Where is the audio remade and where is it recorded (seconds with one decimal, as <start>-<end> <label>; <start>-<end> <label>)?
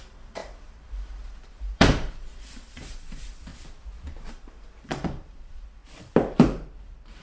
0.0-3.5 remade; 3.5-4.3 recorded; 4.3-5.8 remade; 5.8-6.8 recorded; 6.8-7.2 remade